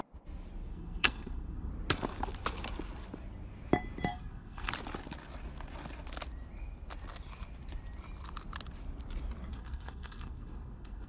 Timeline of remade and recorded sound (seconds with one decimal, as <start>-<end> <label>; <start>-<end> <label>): 0.0-0.7 recorded; 0.7-1.7 remade; 1.7-4.1 recorded; 4.1-4.7 remade; 4.7-9.5 recorded; 9.5-11.1 remade